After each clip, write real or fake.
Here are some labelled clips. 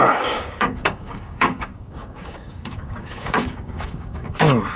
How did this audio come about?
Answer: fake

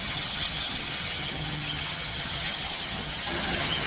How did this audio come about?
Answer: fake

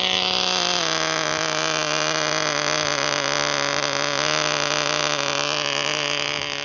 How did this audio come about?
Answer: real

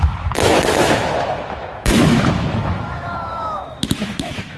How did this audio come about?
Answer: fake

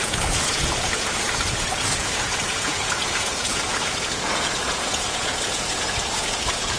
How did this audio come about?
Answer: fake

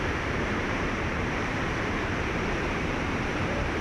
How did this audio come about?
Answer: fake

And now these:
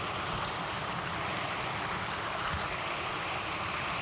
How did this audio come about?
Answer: real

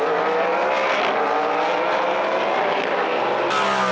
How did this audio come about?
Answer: real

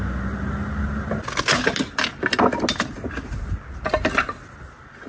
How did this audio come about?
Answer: real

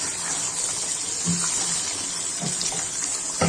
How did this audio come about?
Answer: real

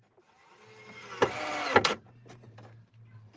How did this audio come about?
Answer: real